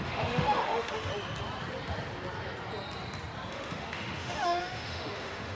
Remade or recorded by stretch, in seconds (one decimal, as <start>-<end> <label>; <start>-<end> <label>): 0.0-1.1 remade; 1.1-3.5 recorded; 3.5-5.6 remade